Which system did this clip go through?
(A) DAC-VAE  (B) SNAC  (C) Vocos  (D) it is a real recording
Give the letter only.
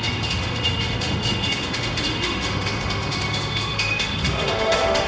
A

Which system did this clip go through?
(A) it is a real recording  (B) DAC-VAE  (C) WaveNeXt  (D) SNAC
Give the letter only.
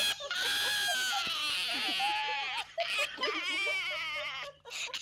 A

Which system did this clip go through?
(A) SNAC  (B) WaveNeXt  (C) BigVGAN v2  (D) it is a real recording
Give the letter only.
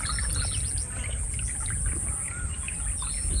D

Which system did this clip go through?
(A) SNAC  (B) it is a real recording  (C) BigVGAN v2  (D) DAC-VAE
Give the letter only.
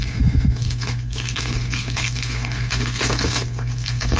A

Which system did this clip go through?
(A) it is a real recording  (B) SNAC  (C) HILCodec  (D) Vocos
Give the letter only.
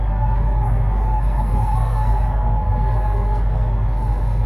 B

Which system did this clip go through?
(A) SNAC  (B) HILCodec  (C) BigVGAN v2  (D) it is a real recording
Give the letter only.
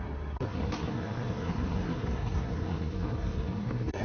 A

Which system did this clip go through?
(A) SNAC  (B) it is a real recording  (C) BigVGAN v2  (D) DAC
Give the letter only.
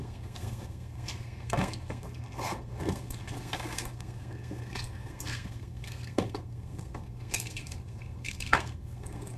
A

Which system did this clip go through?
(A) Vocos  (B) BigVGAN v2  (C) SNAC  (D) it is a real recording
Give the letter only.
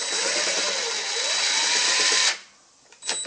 D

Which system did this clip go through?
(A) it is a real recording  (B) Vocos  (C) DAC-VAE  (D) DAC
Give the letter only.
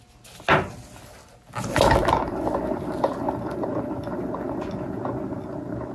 A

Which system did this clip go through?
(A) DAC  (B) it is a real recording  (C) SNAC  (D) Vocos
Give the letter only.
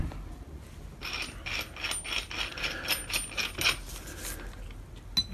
B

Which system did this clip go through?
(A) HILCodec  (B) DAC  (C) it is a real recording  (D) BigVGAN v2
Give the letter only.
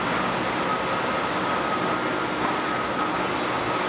C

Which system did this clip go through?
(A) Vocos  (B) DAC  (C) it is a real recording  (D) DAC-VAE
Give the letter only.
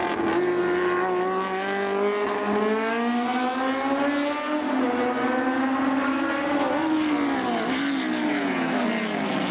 C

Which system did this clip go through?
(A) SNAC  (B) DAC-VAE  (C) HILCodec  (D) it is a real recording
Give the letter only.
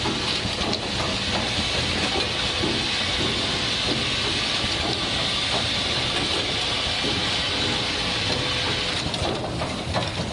D